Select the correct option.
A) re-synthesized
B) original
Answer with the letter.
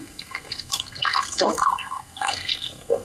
A